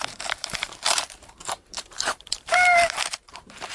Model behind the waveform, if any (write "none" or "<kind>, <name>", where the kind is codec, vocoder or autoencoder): vocoder, BigVGAN v2